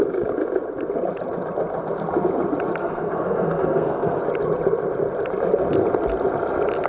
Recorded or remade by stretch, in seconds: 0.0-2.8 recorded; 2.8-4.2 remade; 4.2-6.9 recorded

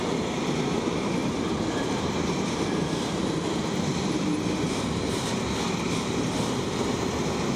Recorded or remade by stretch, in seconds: 0.0-7.6 recorded